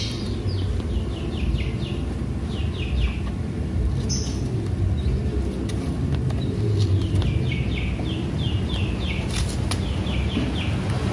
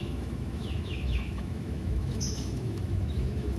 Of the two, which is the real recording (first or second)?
first